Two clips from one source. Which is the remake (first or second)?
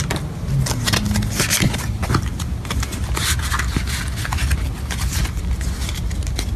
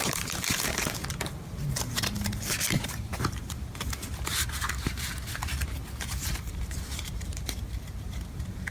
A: second